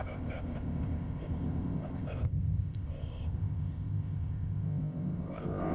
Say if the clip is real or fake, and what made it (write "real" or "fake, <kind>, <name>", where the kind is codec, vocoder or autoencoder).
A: fake, codec, ZipCodec